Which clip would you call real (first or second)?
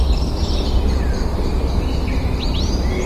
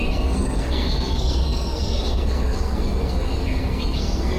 first